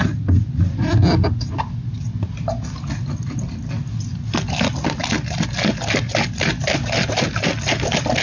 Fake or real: real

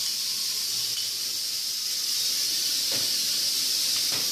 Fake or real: real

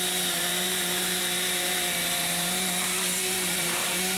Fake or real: fake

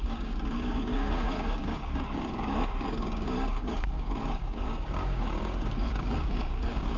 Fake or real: fake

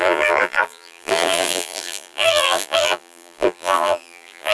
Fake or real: fake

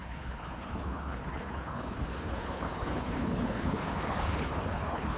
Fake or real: fake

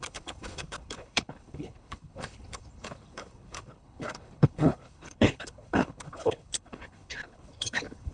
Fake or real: fake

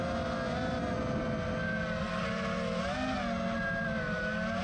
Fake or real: real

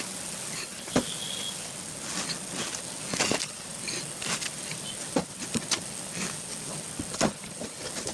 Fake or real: real